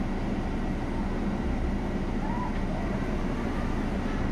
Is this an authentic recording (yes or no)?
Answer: yes